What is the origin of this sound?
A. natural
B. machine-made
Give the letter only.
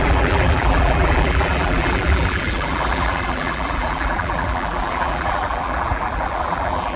B